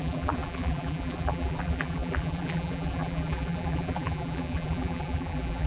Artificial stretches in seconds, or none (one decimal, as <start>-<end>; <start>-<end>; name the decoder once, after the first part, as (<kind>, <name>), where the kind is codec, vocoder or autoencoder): 0.0-5.7 (vocoder, BigVGAN v2)